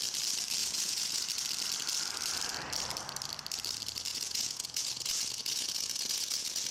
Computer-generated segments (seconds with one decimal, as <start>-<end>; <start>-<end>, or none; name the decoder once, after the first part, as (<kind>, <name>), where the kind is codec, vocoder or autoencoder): 0.6-1.2 (vocoder, Vocos); 4.1-6.7